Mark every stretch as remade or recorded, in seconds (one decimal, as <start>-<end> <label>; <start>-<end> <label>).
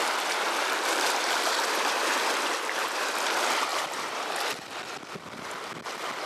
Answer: 0.0-6.3 remade